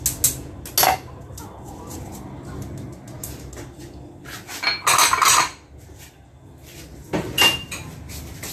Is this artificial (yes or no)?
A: no